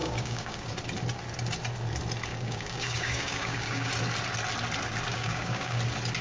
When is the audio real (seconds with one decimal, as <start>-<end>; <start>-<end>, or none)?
0.7-2.3; 3.9-5.1; 5.8-6.2